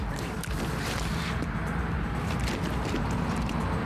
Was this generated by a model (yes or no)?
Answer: no